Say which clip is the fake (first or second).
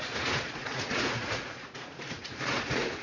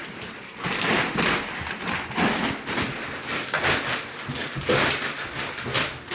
first